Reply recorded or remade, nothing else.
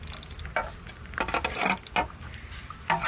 recorded